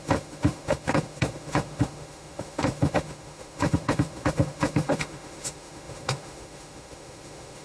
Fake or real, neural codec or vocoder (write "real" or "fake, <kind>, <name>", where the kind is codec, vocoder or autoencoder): fake, autoencoder, DAC-VAE